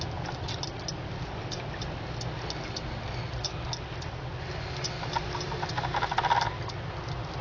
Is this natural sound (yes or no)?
yes